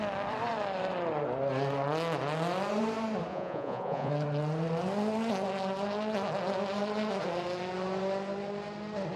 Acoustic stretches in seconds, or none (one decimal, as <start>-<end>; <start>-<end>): 0.0-3.3; 4.1-9.2